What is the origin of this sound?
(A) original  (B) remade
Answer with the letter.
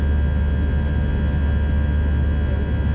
A